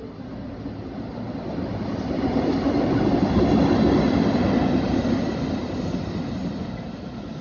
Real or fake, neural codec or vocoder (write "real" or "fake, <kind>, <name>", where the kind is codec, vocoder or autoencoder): real